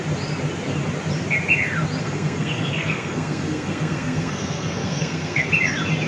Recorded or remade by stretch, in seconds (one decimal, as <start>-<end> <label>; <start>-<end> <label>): 0.0-2.0 recorded; 2.0-5.5 remade; 5.5-6.1 recorded